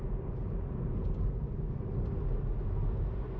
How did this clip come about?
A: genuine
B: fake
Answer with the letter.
A